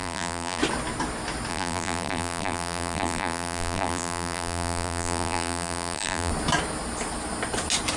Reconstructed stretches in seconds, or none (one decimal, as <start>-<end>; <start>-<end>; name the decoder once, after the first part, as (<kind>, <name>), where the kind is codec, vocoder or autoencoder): 0.0-0.6 (vocoder, BigVGAN v2); 1.5-6.3

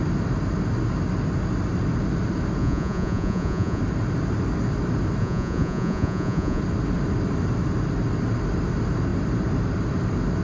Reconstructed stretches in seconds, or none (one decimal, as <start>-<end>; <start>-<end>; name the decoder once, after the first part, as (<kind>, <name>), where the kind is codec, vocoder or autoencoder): 2.6-3.8 (vocoder, Vocos); 5.2-6.6

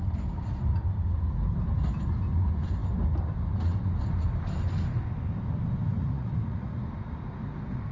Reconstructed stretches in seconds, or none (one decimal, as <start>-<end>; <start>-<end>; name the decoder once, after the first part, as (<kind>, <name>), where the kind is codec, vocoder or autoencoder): 5.9-6.7 (vocoder, Vocos)

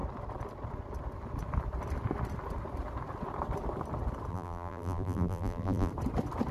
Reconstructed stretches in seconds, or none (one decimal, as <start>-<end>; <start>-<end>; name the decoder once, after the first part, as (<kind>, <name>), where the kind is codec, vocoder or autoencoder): 4.3-5.9 (vocoder, BigVGAN v2)

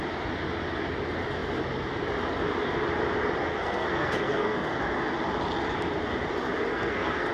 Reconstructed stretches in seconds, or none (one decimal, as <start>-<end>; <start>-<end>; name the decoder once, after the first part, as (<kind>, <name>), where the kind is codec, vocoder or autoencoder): 3.5-4.8 (codec, SNAC); 6.7-7.3

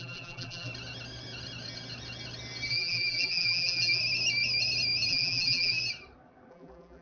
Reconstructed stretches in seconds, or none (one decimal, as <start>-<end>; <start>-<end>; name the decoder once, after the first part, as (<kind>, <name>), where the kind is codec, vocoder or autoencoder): 0.0-0.7 (vocoder, BigVGAN v2); 2.7-4.0; 5.1-5.8; 6.5-7.0

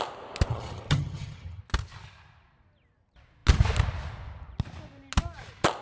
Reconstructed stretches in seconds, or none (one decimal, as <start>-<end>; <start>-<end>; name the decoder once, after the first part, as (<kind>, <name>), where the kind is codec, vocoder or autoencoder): 0.5-1.6 (vocoder, HiFi-GAN)

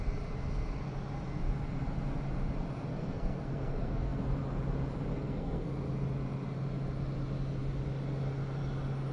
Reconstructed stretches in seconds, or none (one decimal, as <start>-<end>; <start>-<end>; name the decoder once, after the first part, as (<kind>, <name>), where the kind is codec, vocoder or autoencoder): 2.9-4.2 (codec, SNAC); 5.1-5.7